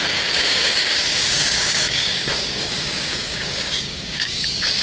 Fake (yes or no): yes